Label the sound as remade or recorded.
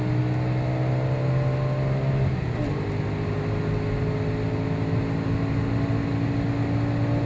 recorded